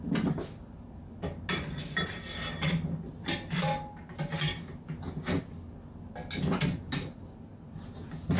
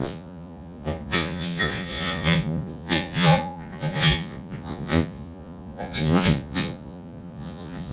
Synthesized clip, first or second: second